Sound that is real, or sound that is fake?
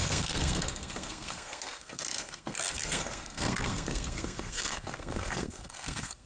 fake